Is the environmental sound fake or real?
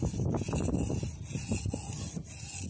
real